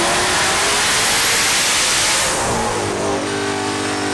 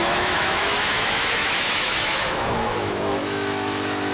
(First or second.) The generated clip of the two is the second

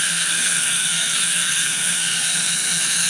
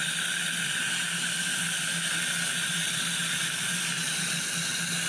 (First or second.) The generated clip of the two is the first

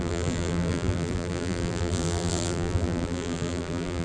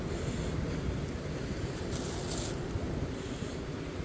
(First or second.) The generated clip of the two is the first